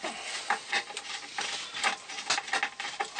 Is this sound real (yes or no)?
yes